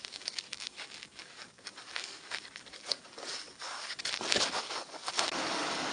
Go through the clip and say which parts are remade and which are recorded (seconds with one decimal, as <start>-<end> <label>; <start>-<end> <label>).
0.0-5.9 remade